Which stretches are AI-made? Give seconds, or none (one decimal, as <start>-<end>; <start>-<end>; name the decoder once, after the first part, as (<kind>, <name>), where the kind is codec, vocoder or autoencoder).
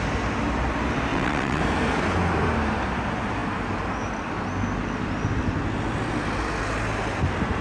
1.1-1.6 (vocoder, WaveNeXt)